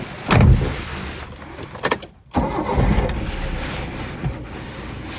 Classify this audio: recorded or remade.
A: recorded